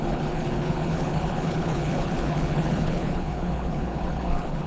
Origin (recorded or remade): remade